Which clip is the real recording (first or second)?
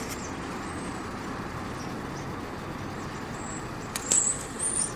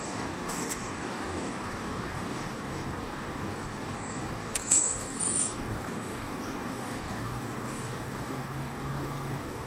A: first